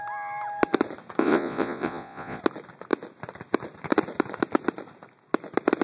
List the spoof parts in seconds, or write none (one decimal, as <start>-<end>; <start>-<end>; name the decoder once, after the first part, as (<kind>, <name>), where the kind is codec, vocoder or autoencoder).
1.2-2.4 (vocoder, Vocos)